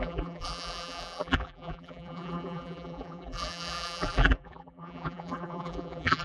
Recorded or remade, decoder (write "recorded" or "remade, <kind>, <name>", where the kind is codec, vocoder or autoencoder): remade, vocoder, BigVGAN v2